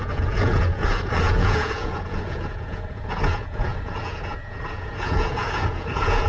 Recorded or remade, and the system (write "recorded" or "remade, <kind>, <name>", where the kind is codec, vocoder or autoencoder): remade, vocoder, Vocos